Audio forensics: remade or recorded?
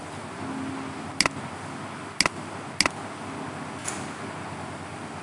recorded